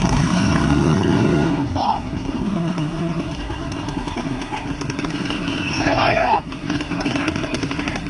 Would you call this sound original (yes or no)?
no